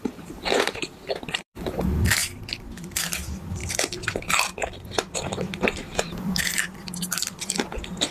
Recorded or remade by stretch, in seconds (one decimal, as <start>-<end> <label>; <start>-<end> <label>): 0.0-2.2 remade; 2.2-2.8 recorded; 2.8-8.1 remade